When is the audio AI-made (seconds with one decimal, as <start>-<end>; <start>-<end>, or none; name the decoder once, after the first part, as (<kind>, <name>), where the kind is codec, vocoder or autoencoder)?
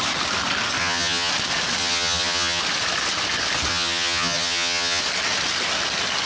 0.8-1.3 (vocoder, HiFi-GAN); 1.8-2.6; 3.7-5.0